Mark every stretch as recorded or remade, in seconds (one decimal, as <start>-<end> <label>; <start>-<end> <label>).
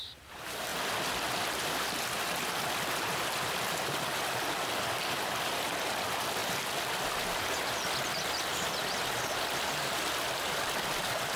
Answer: 0.0-11.4 recorded